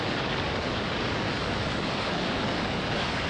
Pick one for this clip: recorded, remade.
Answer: remade